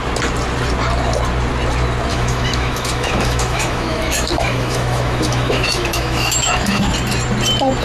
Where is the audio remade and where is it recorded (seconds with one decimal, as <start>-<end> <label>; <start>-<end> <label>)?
0.0-2.1 recorded; 2.1-6.8 remade; 6.8-7.8 recorded